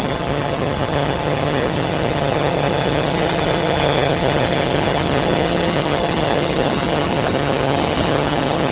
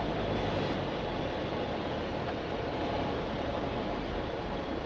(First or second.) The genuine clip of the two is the second